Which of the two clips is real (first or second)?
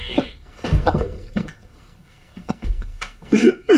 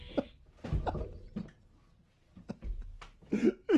second